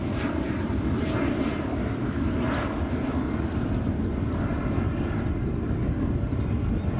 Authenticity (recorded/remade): recorded